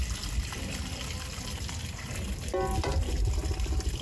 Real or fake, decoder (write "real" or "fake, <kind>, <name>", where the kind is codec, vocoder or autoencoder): real